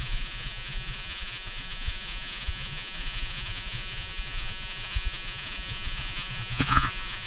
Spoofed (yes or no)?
yes